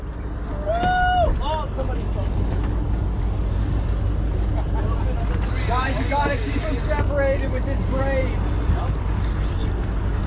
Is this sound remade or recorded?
recorded